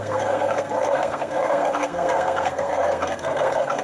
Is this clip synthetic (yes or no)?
yes